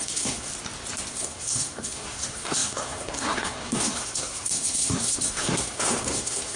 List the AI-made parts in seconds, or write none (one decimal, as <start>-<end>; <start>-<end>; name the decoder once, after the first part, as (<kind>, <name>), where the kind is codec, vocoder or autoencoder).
0.0-0.5 (codec, SNAC); 1.1-6.6